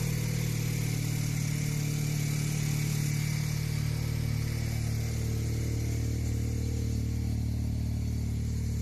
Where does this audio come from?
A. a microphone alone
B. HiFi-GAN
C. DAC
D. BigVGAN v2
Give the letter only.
A